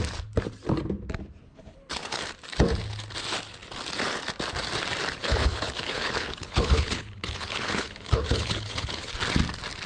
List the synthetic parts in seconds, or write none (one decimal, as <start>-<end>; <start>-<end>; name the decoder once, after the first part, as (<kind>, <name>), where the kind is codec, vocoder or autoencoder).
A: 1.4-2.2 (codec, HILCodec); 5.2-9.1